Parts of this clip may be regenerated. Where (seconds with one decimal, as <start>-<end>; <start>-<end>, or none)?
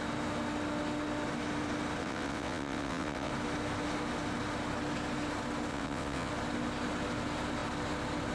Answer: 2.0-3.3; 5.7-6.3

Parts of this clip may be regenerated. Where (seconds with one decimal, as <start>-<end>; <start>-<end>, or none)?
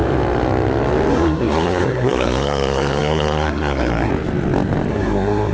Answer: 1.1-4.1; 4.9-5.5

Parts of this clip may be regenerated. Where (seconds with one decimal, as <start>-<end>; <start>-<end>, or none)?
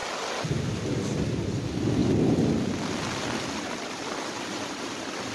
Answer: 0.0-5.3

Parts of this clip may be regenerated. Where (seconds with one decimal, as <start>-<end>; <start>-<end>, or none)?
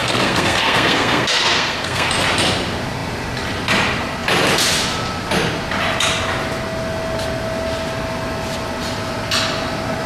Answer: 0.0-2.1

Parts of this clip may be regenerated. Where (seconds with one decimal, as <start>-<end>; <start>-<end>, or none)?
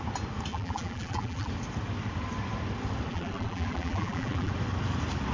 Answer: 0.5-1.5; 3.1-4.5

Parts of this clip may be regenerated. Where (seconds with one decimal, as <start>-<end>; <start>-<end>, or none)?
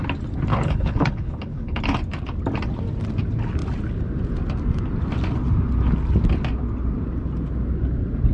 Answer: 0.5-1.8